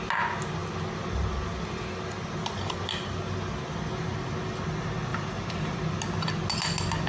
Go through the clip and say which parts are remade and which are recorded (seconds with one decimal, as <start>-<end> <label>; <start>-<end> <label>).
0.0-5.1 recorded; 5.1-5.8 remade; 5.8-7.1 recorded